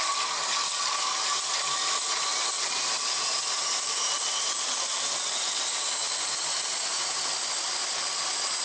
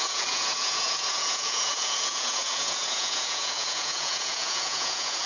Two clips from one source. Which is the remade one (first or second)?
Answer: second